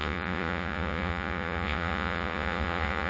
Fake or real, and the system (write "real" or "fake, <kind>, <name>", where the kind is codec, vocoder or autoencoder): fake, vocoder, Vocos